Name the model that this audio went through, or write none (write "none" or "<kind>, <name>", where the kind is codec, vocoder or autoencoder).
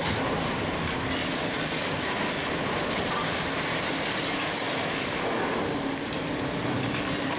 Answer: none